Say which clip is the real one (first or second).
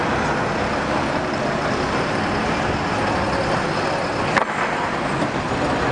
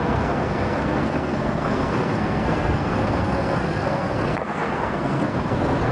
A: first